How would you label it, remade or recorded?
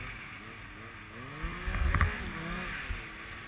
recorded